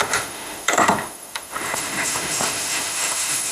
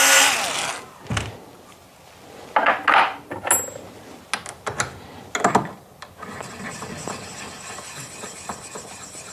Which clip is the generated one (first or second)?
first